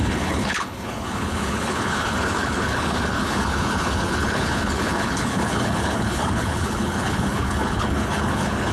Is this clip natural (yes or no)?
no